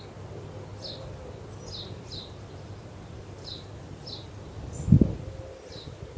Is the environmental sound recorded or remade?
recorded